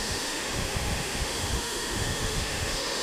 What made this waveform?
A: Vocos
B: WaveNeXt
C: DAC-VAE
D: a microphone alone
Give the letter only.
C